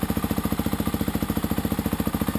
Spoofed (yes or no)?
no